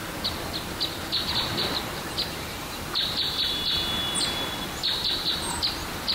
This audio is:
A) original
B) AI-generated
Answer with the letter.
A